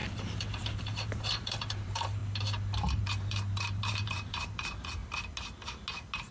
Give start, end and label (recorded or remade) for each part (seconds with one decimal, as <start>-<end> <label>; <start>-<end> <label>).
0.0-2.2 remade; 2.2-3.0 recorded; 3.0-5.0 remade; 5.0-6.3 recorded